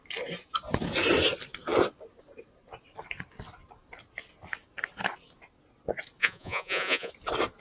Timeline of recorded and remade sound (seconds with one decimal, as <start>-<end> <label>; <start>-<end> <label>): 0.0-6.2 recorded; 6.2-7.1 remade; 7.1-7.6 recorded